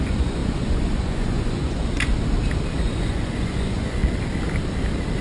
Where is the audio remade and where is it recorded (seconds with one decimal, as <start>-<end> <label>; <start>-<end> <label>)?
0.0-1.8 remade; 1.8-2.8 recorded; 2.8-4.0 remade; 4.0-5.2 recorded